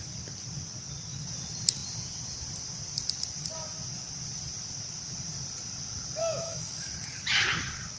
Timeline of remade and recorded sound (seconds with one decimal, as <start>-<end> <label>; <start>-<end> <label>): 0.0-6.2 recorded; 6.2-6.9 remade; 6.9-8.0 recorded